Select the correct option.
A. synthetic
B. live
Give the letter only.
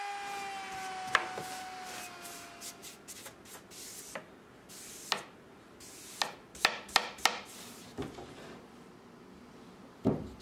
B